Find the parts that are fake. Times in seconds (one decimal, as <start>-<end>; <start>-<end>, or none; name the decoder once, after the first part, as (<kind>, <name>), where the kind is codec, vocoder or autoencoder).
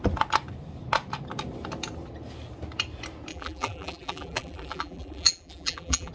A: 3.3-6.1 (vocoder, BigVGAN v2)